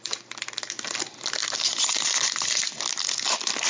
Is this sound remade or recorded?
remade